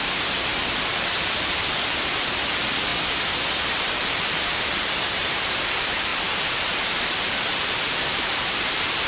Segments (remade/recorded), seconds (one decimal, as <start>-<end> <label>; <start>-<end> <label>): 0.0-2.9 remade; 2.9-3.8 recorded; 3.8-9.1 remade